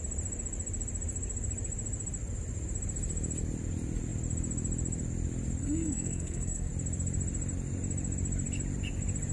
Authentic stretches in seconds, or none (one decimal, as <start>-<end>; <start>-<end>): 0.0-5.6; 6.7-9.3